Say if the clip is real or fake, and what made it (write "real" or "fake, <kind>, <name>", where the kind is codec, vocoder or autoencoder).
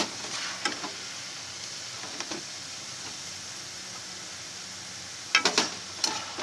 real